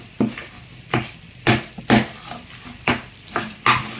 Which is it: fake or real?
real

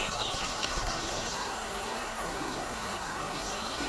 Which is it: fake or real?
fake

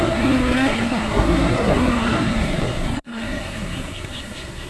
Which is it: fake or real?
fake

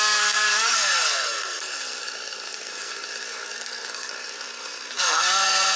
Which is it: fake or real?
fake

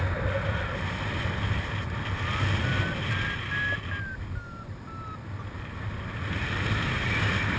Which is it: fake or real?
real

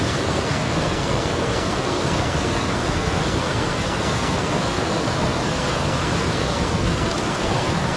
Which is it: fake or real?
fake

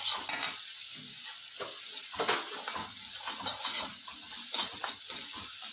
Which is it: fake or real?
real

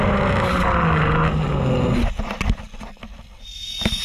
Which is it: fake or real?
real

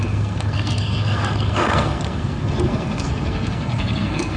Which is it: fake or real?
fake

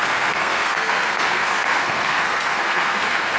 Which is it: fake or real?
fake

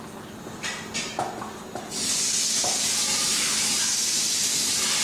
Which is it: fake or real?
real